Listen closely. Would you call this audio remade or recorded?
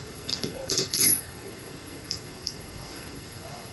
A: remade